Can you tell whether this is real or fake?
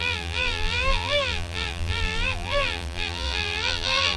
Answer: fake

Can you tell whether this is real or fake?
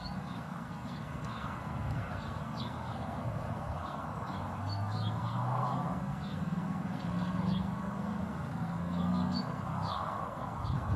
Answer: fake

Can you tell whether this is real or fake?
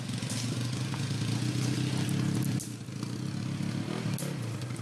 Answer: real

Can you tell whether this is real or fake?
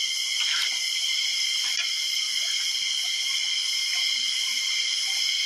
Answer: fake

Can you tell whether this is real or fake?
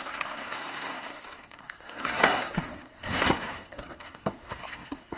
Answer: fake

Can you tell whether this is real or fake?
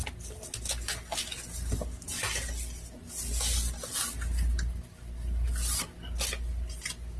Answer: real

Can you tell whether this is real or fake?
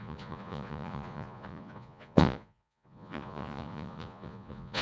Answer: fake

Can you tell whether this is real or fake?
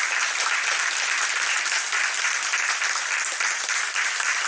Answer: real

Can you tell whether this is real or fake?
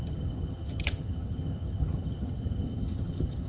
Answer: fake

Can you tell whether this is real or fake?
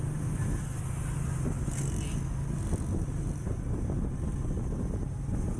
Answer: real